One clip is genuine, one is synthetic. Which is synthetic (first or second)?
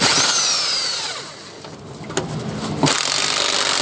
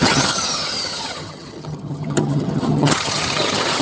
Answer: second